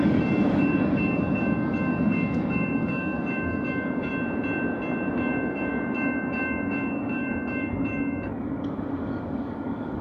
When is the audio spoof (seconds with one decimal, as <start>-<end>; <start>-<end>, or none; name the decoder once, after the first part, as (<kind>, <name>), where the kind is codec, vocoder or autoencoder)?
0.0-4.1 (codec, DAC); 5.1-10.0